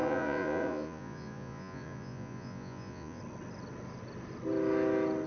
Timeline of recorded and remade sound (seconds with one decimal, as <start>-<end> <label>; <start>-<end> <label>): 0.0-3.2 remade; 3.2-5.3 recorded

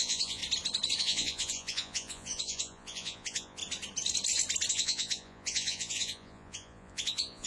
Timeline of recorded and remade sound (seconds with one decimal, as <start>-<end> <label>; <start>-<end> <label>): 0.0-0.4 remade; 0.4-1.0 recorded; 1.0-3.6 remade; 3.6-4.7 recorded; 4.7-7.5 remade

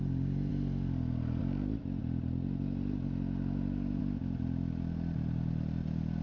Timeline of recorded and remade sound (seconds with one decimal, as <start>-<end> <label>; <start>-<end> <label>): 0.0-6.2 recorded